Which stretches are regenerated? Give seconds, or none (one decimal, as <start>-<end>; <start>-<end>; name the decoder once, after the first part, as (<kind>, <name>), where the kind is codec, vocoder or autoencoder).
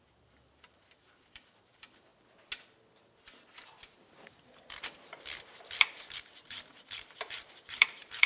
0.0-2.1 (vocoder, BigVGAN v2); 4.1-8.3